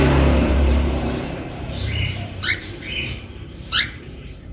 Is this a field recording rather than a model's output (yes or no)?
no